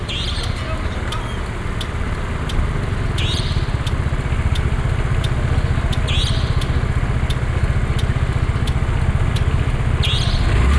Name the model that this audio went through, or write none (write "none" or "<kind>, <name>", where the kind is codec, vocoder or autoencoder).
none